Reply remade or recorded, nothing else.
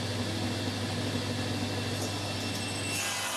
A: recorded